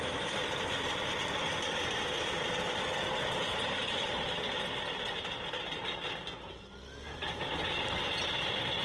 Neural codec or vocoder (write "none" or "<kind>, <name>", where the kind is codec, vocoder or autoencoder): none